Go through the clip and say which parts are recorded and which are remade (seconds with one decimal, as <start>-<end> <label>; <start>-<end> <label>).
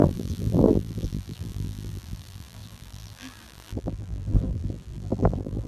0.0-5.7 remade